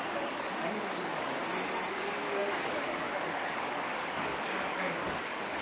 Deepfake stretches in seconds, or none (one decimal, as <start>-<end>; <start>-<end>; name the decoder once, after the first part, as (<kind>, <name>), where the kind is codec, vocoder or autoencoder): 0.0-1.4 (codec, DAC); 1.9-5.6